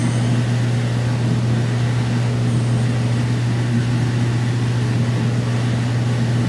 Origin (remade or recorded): recorded